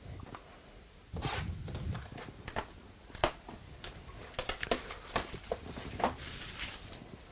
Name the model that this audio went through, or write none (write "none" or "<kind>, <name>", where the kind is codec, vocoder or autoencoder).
none